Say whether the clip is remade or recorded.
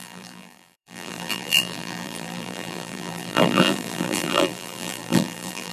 remade